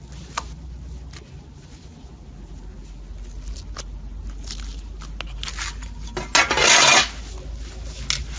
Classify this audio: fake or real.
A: real